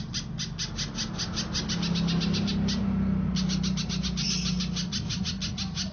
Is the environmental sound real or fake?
real